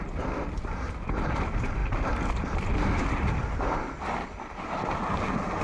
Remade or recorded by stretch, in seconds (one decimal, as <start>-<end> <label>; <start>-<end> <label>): 0.0-5.6 recorded